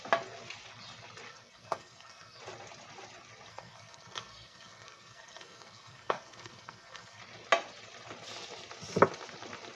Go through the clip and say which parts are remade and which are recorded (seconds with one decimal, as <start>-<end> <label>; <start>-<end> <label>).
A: 0.0-1.3 recorded; 1.3-2.4 remade; 2.4-3.5 recorded; 3.5-7.2 remade; 7.2-9.8 recorded